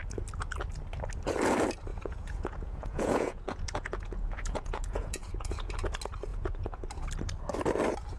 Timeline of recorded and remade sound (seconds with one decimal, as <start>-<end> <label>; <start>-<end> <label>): 0.0-1.9 recorded; 1.9-5.7 remade; 5.7-6.3 recorded; 6.3-6.8 remade; 6.8-8.2 recorded